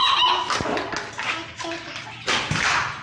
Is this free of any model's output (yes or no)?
yes